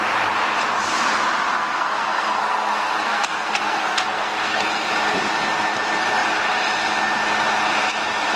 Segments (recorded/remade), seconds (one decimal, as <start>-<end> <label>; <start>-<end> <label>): 0.0-1.5 recorded; 1.5-4.9 remade; 4.9-8.4 recorded